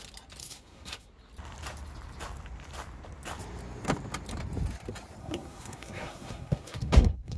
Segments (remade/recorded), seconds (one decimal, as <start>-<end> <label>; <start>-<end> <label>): 0.0-0.4 recorded; 0.4-1.1 remade; 1.1-5.2 recorded; 5.2-7.4 remade